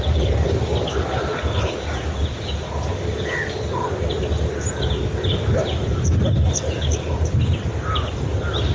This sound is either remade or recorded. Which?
recorded